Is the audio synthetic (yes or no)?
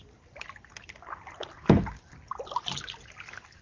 no